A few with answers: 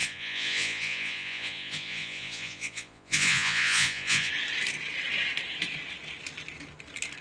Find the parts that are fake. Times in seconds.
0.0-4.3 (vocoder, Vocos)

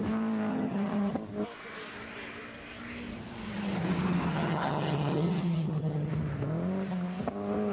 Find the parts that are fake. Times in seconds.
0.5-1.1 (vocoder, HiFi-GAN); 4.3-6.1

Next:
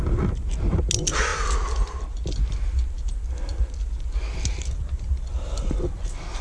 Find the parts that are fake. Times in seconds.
none

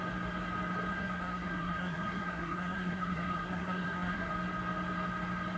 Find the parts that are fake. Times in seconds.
0.9-4.3 (codec, SNAC)

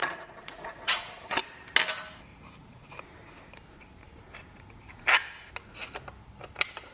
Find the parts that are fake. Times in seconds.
0.0-1.4 (vocoder, Vocos); 2.3-3.0

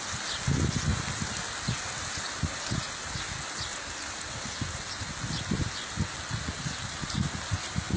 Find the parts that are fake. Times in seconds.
none